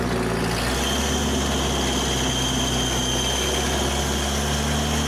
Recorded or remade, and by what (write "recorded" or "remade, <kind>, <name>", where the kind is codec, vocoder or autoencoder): recorded